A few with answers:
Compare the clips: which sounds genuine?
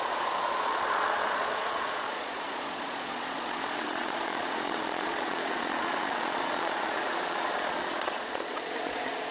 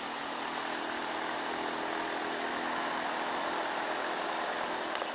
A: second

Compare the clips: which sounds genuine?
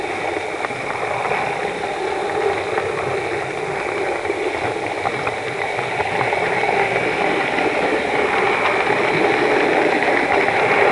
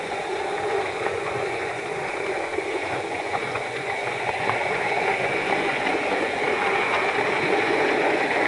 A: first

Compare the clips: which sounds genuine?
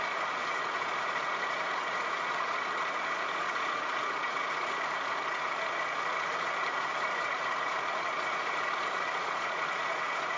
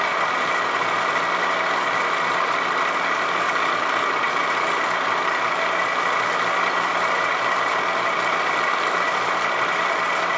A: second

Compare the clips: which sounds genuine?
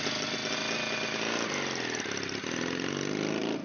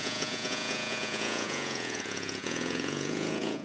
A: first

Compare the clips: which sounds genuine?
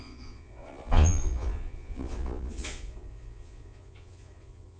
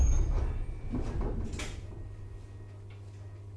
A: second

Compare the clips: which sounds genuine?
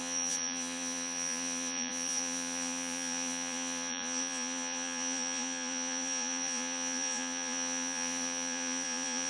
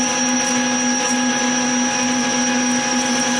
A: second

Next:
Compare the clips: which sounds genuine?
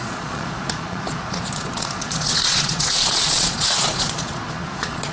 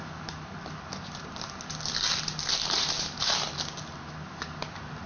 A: second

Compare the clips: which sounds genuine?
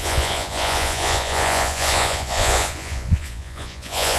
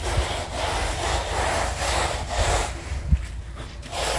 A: second